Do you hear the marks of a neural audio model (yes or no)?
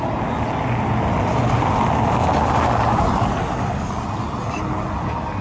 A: no